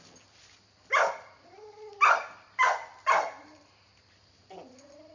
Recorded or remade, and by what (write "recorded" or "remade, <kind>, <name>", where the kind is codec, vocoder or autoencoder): recorded